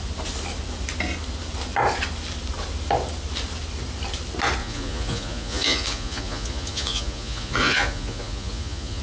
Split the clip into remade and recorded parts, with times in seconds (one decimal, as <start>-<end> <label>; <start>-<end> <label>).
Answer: 0.0-4.6 recorded; 4.6-9.0 remade